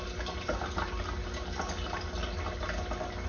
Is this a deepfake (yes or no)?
no